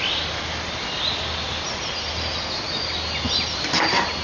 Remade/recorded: recorded